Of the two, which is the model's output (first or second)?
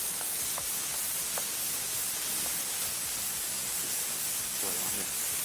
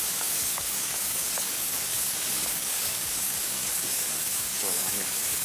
second